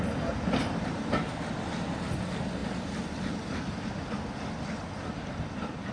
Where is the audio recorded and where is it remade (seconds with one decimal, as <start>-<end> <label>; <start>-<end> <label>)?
0.0-5.9 recorded